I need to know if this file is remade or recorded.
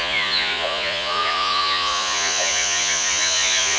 remade